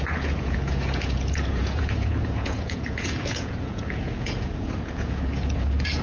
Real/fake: fake